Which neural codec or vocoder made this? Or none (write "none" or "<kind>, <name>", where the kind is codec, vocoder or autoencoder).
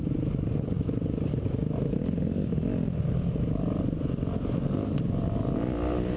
none